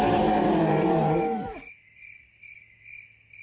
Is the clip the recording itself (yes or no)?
yes